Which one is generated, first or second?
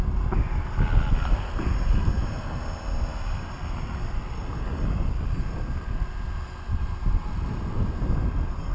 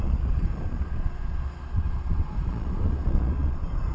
second